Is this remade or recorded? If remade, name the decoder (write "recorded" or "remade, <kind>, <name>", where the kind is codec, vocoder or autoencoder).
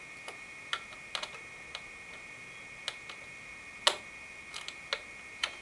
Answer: recorded